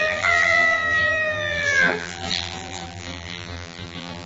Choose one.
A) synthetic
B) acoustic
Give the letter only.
A